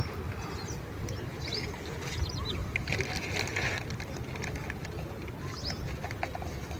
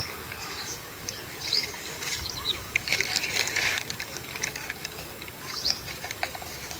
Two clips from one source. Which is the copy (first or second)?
second